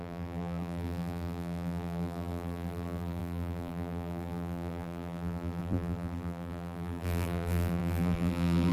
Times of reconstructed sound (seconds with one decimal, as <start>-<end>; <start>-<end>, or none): 0.0-8.7